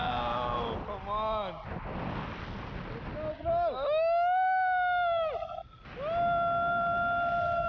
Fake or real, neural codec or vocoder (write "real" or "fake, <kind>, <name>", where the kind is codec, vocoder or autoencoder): real